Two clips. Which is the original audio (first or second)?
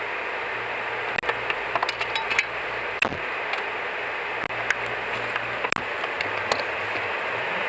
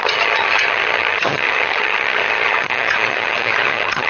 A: first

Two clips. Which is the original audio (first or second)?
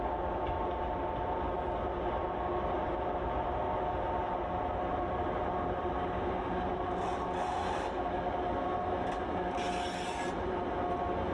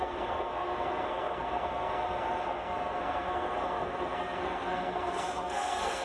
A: first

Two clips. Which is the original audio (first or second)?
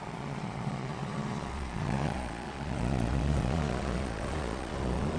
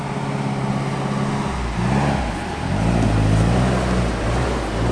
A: second